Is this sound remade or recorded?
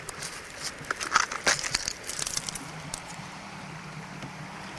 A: remade